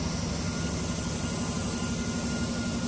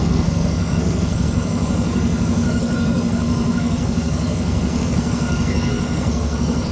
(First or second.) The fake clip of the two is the second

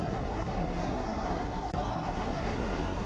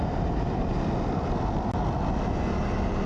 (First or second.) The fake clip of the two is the first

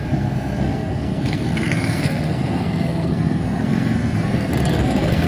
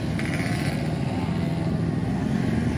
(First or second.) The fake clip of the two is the first